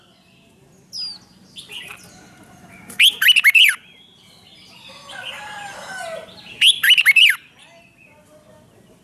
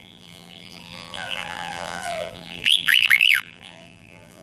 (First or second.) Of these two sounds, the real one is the first